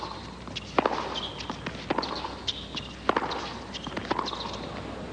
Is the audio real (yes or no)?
yes